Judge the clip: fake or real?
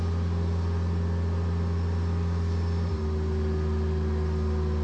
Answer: real